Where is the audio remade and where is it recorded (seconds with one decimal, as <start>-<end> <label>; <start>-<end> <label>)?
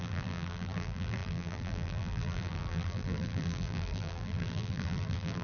0.0-5.4 remade